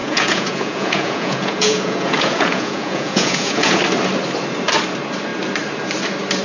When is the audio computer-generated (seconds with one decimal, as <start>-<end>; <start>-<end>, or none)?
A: 0.0-3.8